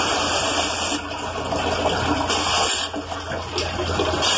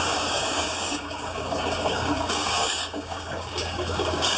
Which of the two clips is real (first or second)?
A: first